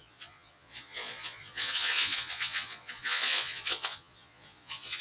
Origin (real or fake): fake